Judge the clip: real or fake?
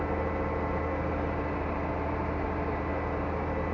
real